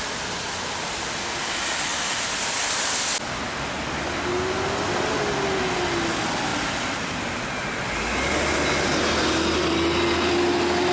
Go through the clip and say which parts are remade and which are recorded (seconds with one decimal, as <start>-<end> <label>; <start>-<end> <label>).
0.0-6.5 recorded; 6.5-7.4 remade; 7.4-10.9 recorded